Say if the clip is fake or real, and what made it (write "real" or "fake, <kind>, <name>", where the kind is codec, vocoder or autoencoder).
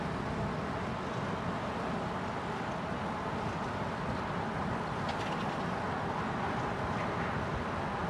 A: real